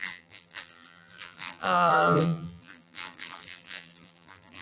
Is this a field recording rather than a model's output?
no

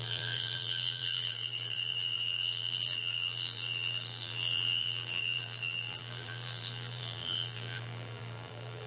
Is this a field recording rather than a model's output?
no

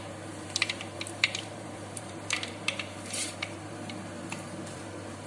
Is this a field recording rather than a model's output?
no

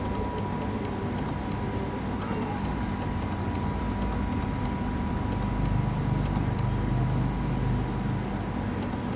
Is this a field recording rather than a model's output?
yes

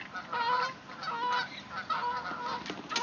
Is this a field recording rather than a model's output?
yes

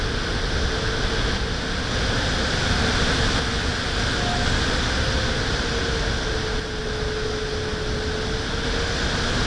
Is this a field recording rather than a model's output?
yes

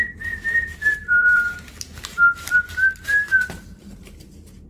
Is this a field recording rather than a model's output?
no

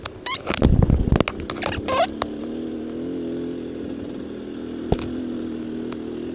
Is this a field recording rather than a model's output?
yes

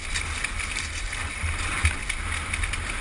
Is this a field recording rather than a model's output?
yes